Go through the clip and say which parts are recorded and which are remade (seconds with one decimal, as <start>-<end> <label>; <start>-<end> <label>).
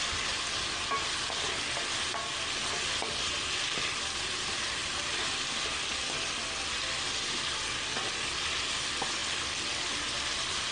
0.0-10.7 recorded